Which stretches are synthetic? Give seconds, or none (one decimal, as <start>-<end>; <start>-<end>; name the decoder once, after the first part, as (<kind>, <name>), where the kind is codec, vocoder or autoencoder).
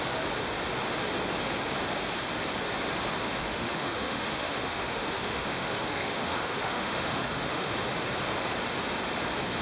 3.2-7.7 (autoencoder, DAC-VAE)